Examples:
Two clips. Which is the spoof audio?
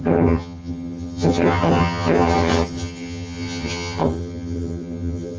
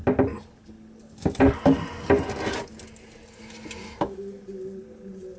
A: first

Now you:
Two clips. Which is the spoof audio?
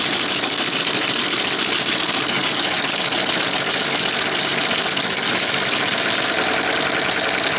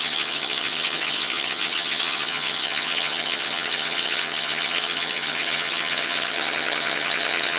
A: second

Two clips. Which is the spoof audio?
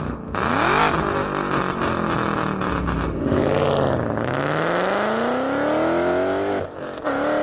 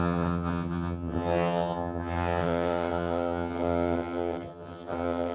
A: second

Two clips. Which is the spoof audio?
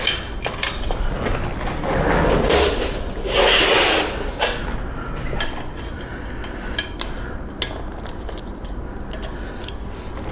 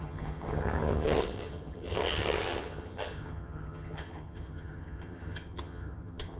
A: second